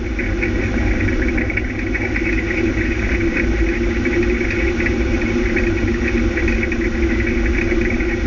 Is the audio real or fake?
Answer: real